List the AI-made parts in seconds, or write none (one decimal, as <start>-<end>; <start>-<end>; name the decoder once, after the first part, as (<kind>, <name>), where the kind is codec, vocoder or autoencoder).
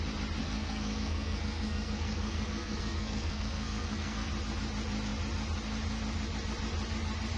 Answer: 0.4-4.3 (codec, SNAC)